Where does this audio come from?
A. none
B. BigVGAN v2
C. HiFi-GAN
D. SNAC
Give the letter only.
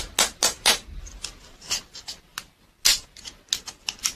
A